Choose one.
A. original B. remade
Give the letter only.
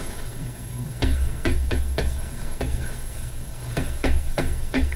B